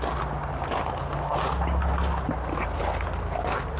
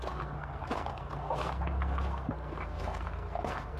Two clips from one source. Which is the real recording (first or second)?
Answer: first